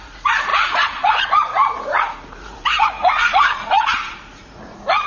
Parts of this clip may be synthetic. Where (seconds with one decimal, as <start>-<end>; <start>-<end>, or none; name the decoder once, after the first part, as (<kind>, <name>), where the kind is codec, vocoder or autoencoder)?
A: 0.0-5.1 (vocoder, Vocos)